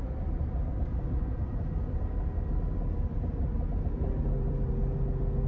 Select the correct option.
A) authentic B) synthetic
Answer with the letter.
A